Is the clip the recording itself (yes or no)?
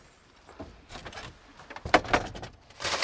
yes